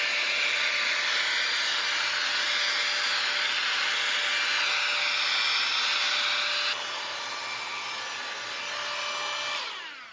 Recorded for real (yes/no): yes